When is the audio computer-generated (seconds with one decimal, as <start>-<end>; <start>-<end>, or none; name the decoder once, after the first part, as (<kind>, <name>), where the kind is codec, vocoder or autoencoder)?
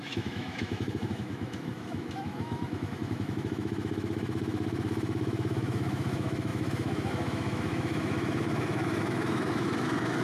0.0-10.2 (autoencoder, DAC-VAE)